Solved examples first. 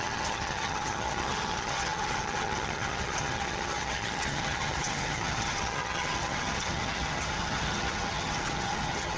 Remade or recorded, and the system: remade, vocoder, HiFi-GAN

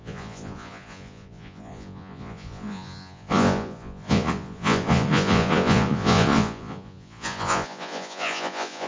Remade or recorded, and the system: remade, vocoder, Vocos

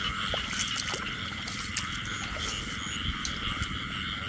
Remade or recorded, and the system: recorded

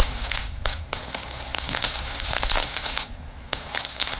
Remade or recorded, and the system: remade, codec, SNAC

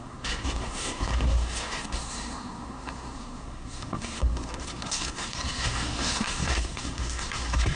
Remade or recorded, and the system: remade, codec, SNAC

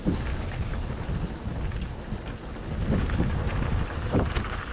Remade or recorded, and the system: recorded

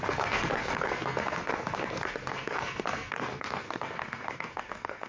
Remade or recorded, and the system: remade, codec, SNAC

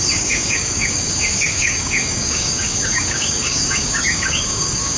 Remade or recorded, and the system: remade, codec, DAC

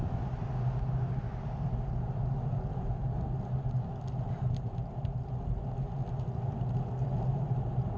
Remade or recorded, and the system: recorded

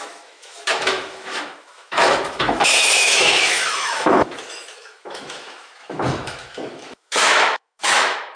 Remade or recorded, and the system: remade, autoencoder, DAC-VAE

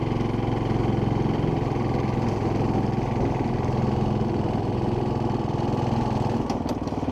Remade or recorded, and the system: recorded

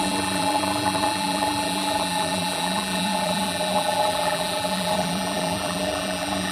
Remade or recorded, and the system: remade, vocoder, BigVGAN v2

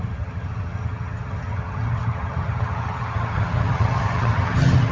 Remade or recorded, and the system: remade, vocoder, HiFi-GAN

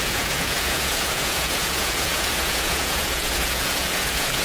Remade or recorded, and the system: remade, vocoder, Vocos